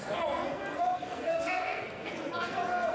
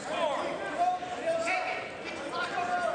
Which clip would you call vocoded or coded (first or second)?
first